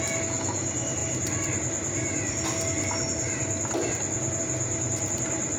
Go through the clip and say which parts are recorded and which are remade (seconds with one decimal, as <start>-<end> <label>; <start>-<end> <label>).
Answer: 0.0-5.6 recorded